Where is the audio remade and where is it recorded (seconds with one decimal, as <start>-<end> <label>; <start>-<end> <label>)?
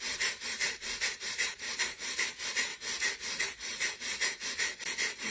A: 0.0-2.7 remade; 2.7-3.4 recorded; 3.4-5.3 remade